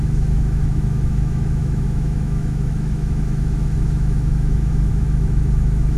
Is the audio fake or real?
fake